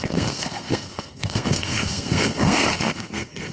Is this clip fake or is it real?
fake